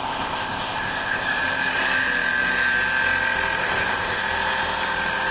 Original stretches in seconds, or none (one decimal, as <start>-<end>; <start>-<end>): 1.4-3.6; 4.2-5.3